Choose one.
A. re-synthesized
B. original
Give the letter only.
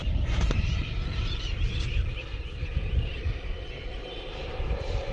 A